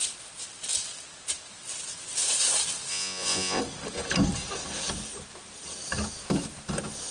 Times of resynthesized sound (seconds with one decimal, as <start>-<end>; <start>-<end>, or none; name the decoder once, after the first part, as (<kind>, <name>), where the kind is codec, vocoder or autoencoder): 2.9-3.6 (vocoder, Vocos)